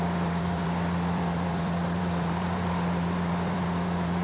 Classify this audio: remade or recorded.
remade